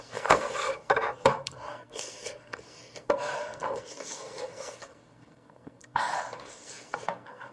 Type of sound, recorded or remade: remade